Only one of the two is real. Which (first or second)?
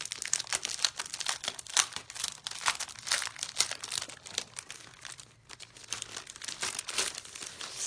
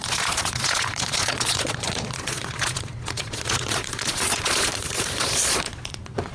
first